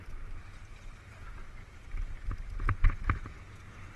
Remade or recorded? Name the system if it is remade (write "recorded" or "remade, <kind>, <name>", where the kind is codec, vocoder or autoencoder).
recorded